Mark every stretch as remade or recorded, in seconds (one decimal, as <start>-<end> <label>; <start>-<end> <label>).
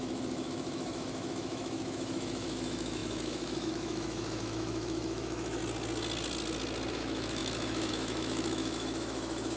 0.0-5.6 remade; 5.6-6.9 recorded; 6.9-9.6 remade